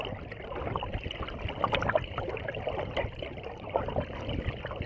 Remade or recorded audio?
recorded